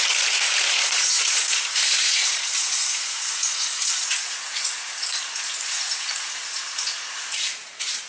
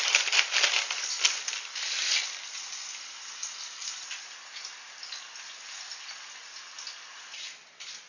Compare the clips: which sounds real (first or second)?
second